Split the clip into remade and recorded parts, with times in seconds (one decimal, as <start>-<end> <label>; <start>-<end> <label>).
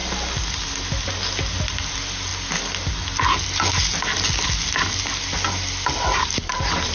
0.0-6.9 recorded